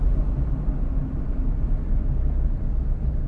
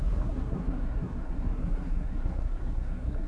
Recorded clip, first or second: first